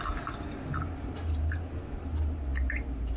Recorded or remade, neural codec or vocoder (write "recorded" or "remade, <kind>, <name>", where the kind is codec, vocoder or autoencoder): recorded